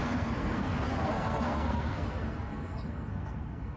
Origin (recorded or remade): remade